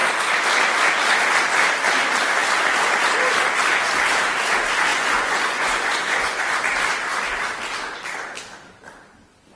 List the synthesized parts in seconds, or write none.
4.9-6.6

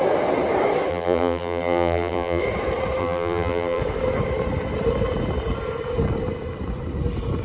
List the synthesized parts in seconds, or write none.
0.9-2.4; 3.0-3.8

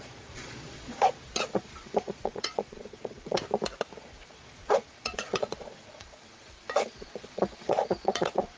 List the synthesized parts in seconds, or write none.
0.0-3.4; 4.0-8.6

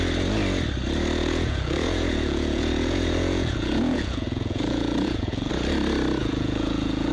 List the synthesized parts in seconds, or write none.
1.2-5.5; 6.2-7.1